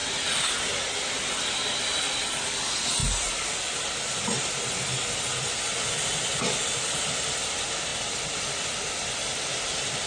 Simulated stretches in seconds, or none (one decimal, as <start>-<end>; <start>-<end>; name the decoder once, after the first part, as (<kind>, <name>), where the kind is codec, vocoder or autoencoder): 7.9-8.4 (vocoder, BigVGAN v2)